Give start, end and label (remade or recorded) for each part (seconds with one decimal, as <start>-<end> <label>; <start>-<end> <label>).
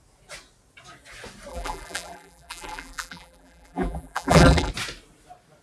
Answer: 0.0-1.5 recorded; 1.5-4.7 remade; 4.7-5.6 recorded